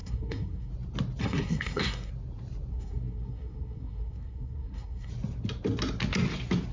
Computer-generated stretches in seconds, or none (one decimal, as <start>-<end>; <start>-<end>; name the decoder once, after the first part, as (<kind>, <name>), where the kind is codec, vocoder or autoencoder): 0.0-0.7 (codec, SNAC); 1.2-2.1; 2.7-5.1